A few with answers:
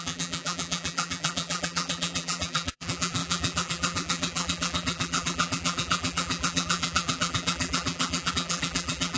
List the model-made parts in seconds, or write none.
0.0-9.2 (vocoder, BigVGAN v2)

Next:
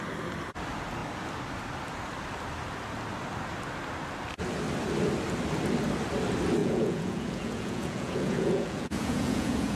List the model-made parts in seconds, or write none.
6.6-9.8 (vocoder, Vocos)

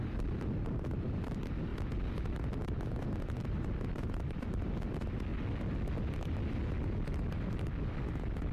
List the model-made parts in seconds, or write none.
0.0-5.3 (vocoder, BigVGAN v2); 7.5-8.5